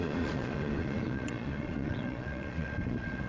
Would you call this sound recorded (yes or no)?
no